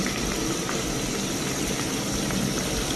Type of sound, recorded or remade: recorded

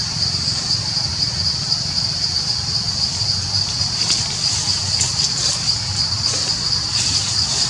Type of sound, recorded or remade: recorded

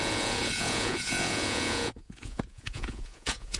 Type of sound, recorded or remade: remade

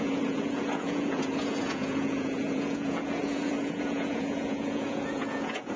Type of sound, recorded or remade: remade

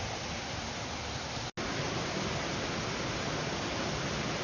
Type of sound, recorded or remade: recorded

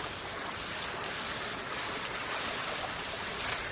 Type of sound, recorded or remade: recorded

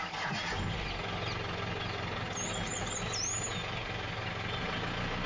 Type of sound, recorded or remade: recorded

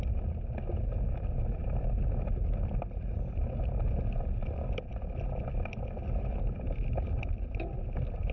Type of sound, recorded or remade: recorded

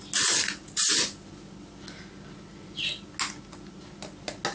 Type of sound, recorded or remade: recorded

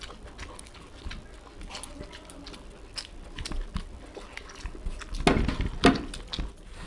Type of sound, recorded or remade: recorded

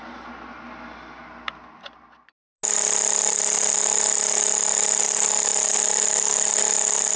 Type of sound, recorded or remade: recorded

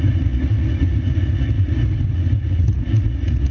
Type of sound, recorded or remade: remade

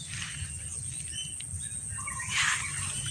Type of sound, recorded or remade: recorded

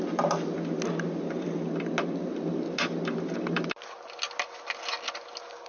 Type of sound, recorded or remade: recorded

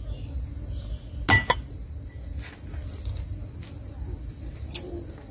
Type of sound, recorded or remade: recorded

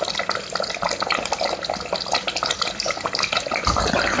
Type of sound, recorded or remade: recorded